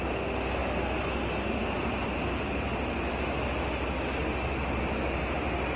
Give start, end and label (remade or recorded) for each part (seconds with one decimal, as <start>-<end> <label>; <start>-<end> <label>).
0.0-5.8 recorded